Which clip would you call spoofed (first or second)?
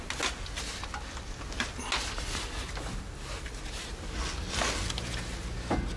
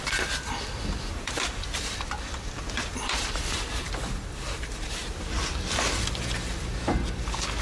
second